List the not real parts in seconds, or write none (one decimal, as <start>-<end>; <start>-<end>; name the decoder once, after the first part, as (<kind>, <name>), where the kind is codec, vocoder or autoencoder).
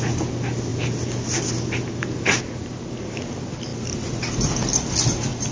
none